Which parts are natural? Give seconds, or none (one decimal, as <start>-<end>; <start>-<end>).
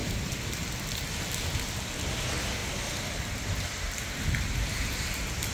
2.6-5.5